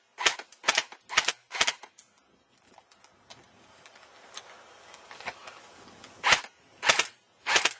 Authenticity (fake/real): real